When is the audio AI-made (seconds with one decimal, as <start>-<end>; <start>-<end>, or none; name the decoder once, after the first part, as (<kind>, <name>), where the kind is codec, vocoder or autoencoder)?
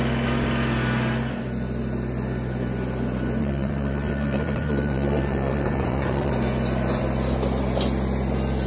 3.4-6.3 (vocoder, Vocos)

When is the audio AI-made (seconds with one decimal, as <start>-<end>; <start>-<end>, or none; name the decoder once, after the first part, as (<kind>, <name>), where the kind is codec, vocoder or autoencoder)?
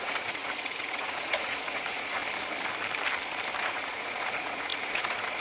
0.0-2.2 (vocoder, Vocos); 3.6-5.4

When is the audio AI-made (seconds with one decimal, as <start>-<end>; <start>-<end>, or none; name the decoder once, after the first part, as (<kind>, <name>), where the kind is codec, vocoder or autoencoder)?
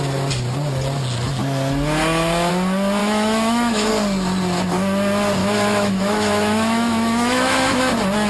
3.0-3.9 (autoencoder, DAC-VAE); 5.4-7.8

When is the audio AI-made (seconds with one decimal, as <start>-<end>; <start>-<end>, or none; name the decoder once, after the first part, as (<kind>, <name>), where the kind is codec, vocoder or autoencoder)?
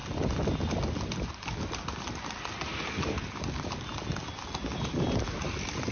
none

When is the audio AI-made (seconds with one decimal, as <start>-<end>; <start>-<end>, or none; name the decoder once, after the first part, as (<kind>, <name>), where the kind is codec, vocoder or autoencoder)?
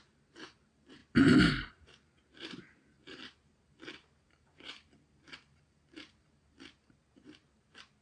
0.0-8.0 (vocoder, BigVGAN v2)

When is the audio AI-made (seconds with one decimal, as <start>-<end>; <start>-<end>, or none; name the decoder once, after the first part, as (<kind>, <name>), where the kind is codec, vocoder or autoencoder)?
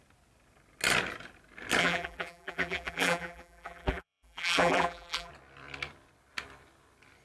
1.8-5.3 (vocoder, BigVGAN v2)